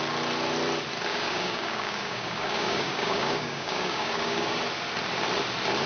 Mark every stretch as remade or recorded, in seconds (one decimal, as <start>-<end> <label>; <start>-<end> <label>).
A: 0.0-1.1 recorded; 1.1-4.6 remade; 4.6-5.9 recorded